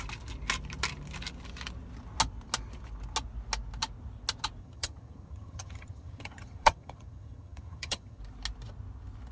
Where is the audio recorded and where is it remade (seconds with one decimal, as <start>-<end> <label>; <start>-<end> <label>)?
0.0-4.6 recorded; 4.6-8.2 remade; 8.2-9.3 recorded